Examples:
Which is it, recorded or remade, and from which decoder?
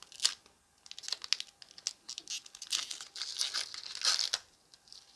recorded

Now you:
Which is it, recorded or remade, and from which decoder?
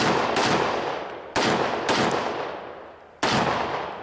recorded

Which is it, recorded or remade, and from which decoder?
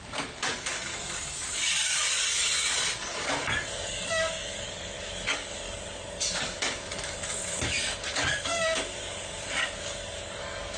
remade, codec, DAC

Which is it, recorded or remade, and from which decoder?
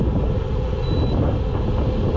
recorded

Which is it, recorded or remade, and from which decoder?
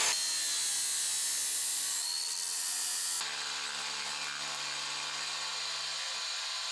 recorded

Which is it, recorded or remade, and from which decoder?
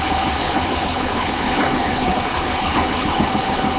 remade, codec, HILCodec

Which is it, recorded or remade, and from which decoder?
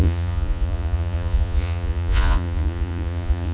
remade, vocoder, Vocos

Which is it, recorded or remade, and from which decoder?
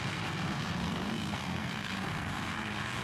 remade, codec, SNAC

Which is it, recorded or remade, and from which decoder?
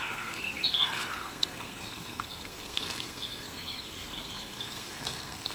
remade, codec, SNAC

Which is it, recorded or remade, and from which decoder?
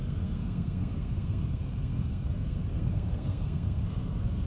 remade, codec, SNAC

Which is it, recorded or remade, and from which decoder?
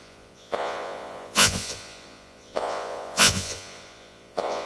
remade, vocoder, Vocos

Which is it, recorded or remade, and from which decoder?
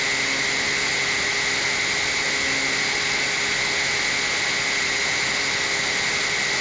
recorded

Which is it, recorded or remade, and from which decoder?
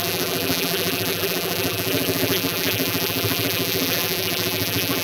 remade, vocoder, BigVGAN v2